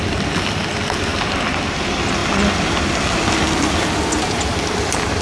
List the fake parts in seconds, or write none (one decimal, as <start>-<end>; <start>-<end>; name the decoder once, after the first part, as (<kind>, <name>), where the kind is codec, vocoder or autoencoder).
none